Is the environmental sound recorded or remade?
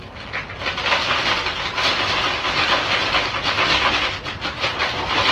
recorded